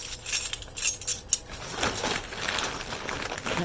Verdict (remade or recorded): recorded